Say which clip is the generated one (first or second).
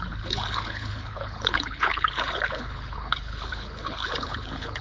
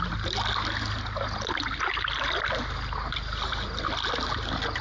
first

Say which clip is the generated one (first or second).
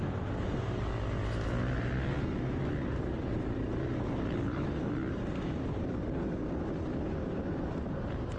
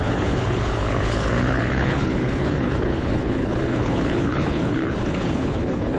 second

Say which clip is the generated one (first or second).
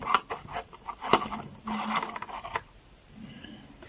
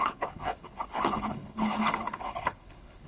second